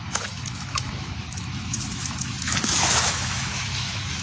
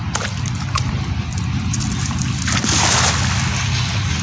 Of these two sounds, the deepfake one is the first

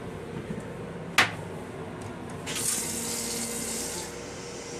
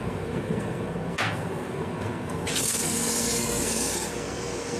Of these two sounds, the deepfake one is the second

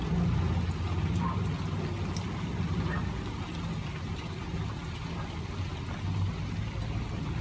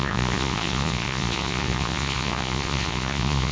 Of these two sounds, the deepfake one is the second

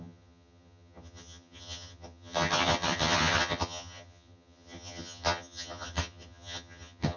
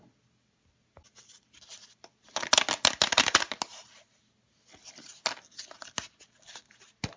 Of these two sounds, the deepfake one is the first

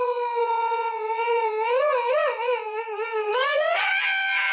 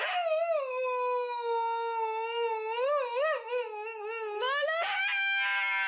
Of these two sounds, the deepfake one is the first